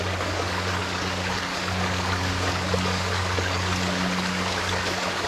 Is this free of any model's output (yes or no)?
no